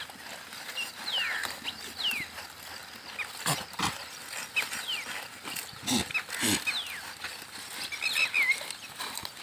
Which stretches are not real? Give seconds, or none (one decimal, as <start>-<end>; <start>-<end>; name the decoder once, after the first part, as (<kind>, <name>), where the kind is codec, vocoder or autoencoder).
none